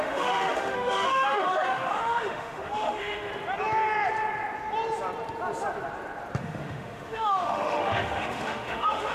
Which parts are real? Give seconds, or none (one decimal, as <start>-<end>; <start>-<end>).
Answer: 3.3-6.4